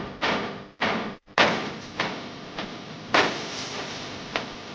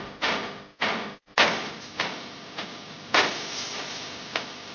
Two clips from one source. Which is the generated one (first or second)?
first